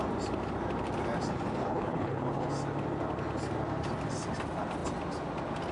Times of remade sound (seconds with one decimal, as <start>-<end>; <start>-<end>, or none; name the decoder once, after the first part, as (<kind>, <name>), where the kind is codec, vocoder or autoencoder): 1.6-2.5 (codec, HILCodec)

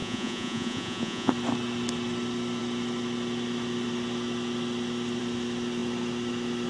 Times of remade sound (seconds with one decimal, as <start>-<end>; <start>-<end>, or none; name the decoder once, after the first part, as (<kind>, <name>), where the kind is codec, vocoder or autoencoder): 0.0-1.3 (vocoder, Vocos)